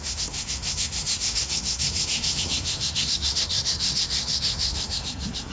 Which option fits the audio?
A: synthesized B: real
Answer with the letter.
A